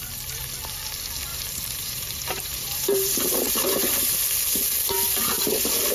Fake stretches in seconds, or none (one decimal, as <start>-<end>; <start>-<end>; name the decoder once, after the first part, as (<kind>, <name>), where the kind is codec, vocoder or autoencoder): 1.3-4.1 (vocoder, BigVGAN v2)